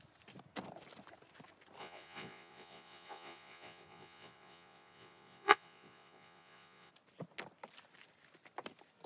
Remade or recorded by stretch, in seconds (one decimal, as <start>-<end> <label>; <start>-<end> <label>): 0.0-1.8 recorded; 1.8-6.9 remade; 6.9-9.1 recorded